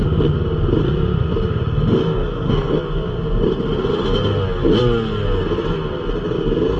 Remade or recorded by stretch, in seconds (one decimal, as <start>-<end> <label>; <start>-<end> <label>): 0.0-2.0 recorded; 2.0-2.7 remade; 2.7-6.8 recorded